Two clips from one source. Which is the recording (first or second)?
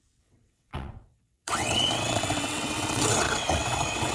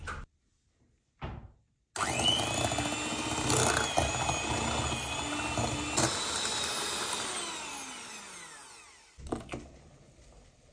second